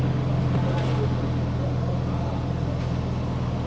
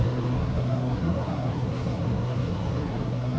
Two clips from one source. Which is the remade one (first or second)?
second